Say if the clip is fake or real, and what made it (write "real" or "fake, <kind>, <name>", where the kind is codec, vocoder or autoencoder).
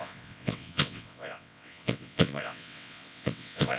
fake, vocoder, WaveNeXt